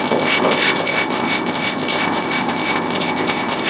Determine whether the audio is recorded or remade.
remade